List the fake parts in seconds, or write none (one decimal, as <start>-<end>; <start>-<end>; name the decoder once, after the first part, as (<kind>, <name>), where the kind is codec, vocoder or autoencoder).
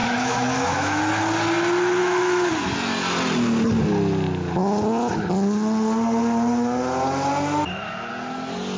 0.0-1.0 (autoencoder, DAC-VAE); 2.0-2.5